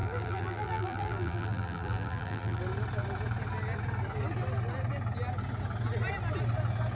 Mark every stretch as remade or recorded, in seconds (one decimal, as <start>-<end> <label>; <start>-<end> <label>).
0.0-2.6 remade; 2.6-6.9 recorded